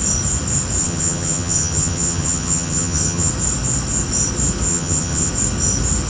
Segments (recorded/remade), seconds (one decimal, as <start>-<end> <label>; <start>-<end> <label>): 0.0-0.8 recorded; 0.8-3.3 remade; 3.3-4.7 recorded; 4.7-5.3 remade; 5.3-6.1 recorded